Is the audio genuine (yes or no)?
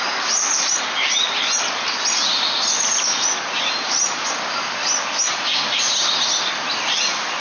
yes